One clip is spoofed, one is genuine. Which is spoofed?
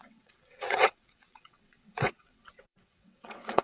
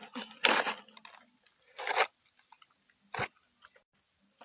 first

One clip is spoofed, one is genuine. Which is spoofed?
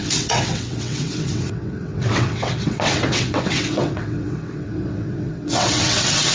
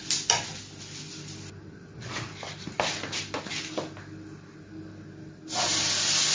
first